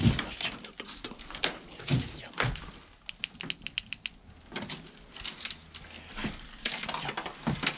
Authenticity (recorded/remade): recorded